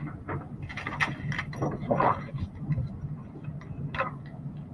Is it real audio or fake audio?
real